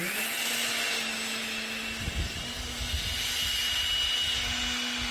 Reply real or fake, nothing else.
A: real